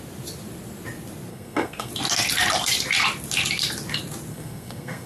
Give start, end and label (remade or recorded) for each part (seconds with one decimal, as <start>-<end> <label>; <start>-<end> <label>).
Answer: 0.0-1.3 recorded; 1.3-1.9 remade; 1.9-4.3 recorded; 4.3-5.1 remade